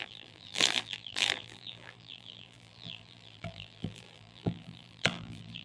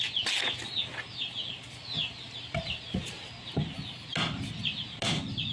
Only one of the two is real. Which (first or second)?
second